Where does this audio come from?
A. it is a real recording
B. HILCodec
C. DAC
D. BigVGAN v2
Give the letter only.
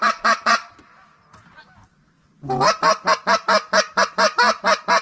A